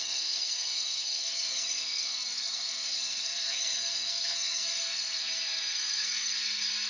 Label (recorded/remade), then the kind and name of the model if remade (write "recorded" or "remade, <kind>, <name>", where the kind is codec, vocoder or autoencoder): remade, codec, SNAC